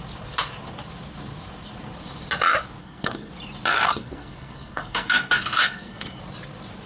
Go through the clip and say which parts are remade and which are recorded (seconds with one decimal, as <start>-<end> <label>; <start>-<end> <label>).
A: 0.0-2.8 recorded; 2.8-3.3 remade; 3.3-3.7 recorded; 3.7-6.2 remade; 6.2-6.9 recorded